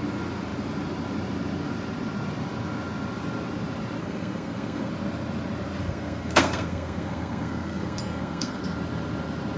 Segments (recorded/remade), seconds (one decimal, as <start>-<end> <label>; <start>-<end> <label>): 0.0-4.0 recorded; 4.0-4.9 remade; 4.9-5.8 recorded; 5.8-8.6 remade; 8.6-9.6 recorded